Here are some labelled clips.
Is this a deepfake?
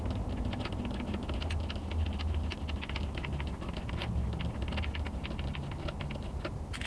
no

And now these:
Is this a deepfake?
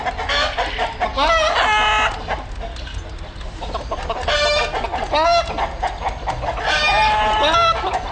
no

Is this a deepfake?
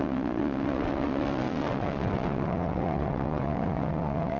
yes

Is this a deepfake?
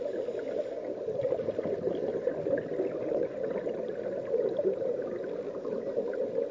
no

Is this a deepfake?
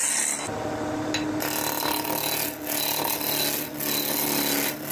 no